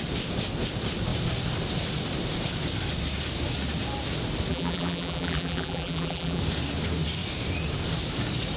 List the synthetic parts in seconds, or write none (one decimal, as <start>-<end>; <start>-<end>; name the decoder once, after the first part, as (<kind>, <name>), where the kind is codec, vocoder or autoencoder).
4.5-6.4 (vocoder, BigVGAN v2)